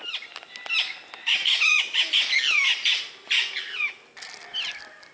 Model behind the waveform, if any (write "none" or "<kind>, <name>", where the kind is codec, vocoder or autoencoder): none